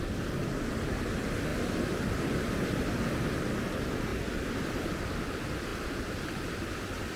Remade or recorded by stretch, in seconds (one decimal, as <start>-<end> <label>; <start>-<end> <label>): 0.0-1.5 recorded; 1.5-3.4 remade; 3.4-4.1 recorded; 4.1-4.7 remade; 4.7-5.7 recorded; 5.7-6.7 remade; 6.7-7.2 recorded